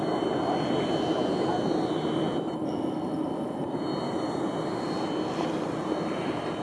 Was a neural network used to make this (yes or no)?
no